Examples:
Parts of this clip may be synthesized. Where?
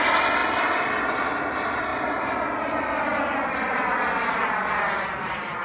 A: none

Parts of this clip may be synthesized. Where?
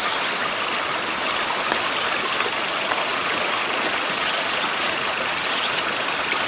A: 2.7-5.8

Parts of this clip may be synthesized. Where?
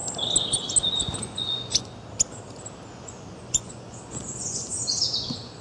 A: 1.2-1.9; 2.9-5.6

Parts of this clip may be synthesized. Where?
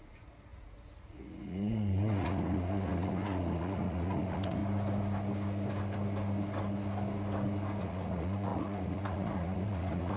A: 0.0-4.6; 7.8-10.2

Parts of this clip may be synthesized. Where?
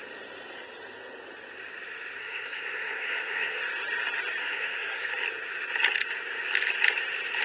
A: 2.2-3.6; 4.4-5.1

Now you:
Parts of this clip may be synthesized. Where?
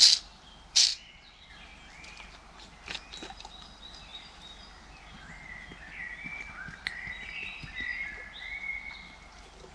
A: 0.9-1.5